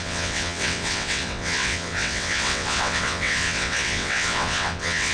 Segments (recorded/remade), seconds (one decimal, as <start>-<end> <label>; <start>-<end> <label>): 0.0-5.1 remade

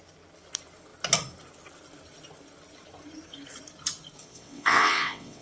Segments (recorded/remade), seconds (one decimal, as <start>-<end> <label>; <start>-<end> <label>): 0.0-4.2 recorded; 4.2-5.4 remade

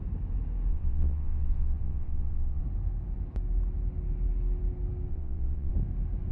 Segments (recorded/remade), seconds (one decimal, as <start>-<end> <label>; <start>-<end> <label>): 0.0-0.7 recorded; 0.7-2.6 remade; 2.6-5.1 recorded; 5.1-5.7 remade; 5.7-6.3 recorded

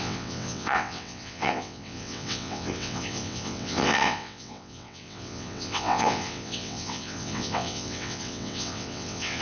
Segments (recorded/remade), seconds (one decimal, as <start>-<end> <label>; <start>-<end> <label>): 0.0-9.4 remade